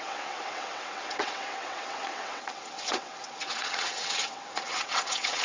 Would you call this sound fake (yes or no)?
yes